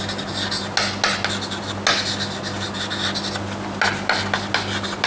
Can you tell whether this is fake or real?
real